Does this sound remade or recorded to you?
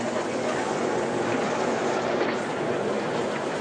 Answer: remade